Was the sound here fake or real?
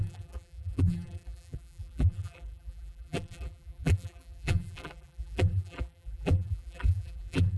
fake